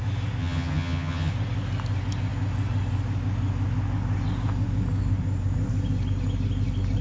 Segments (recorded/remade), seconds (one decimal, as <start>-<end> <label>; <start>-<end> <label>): 0.0-0.4 recorded; 0.4-1.3 remade; 1.3-7.0 recorded